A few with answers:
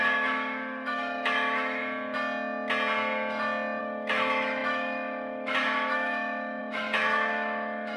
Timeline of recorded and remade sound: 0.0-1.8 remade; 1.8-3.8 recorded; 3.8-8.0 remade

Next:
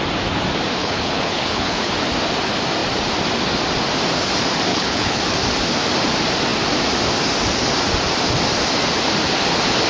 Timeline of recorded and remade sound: 0.0-0.8 recorded; 0.8-1.9 remade; 1.9-4.7 recorded; 4.7-5.2 remade; 5.2-9.9 recorded